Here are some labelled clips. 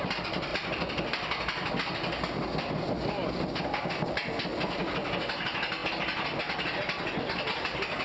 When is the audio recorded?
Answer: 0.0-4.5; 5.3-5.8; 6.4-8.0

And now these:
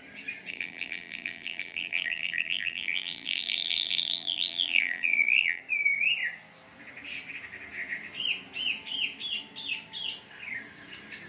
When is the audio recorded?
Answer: 0.0-0.5; 5.6-11.3

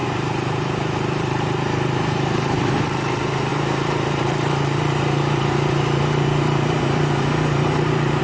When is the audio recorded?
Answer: 2.6-3.5

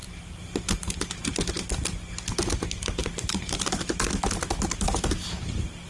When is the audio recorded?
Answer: 1.0-3.0; 3.6-5.9

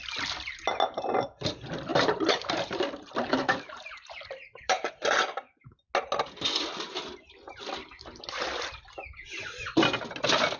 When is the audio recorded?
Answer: 0.0-1.9; 5.0-10.6

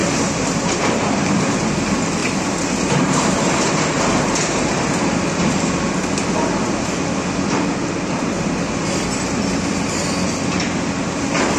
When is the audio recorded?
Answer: 1.0-2.2; 5.7-11.6

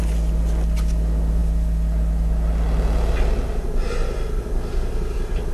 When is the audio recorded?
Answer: 0.0-5.5

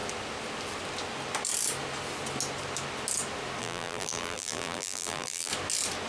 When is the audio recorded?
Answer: 0.0-3.6; 5.5-6.1